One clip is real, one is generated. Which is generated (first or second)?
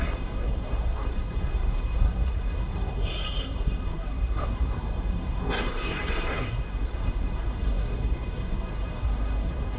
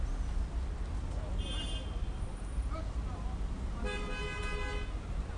first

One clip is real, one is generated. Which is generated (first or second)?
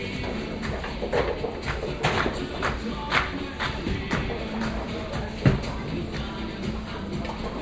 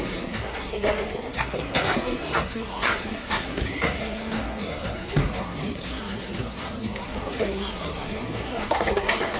second